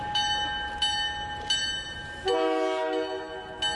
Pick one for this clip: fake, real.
real